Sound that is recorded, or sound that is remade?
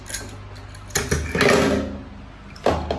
recorded